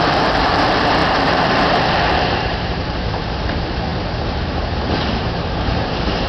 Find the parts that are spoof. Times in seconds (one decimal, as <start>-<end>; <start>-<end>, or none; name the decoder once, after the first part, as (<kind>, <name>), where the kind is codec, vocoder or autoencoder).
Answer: 0.0-6.3 (vocoder, BigVGAN v2)